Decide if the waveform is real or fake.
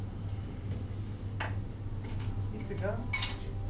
real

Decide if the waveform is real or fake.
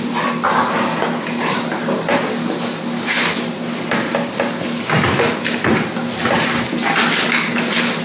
real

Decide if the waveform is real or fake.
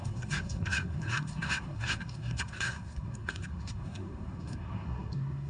fake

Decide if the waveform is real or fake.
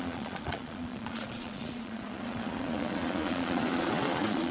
fake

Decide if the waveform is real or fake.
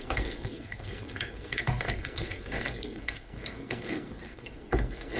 fake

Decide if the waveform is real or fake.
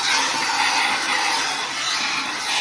real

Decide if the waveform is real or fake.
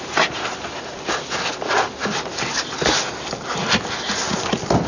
real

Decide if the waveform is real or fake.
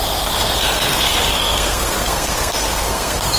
fake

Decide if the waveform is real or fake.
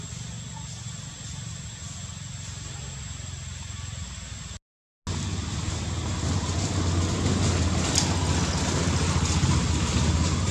real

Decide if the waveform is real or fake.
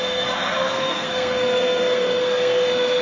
fake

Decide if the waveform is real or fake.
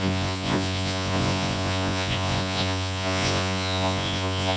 fake